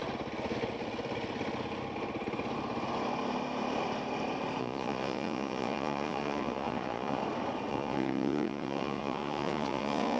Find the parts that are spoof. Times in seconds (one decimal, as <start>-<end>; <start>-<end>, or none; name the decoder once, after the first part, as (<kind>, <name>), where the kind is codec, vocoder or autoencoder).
4.6-7.2 (vocoder, Vocos); 7.7-10.2